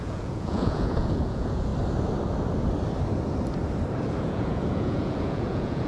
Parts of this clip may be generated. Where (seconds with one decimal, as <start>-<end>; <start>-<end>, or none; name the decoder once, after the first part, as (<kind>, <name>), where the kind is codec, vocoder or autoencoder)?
0.0-1.7 (vocoder, Vocos); 4.2-5.9